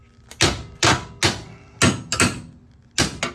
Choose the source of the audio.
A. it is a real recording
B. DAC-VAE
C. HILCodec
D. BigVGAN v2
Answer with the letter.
A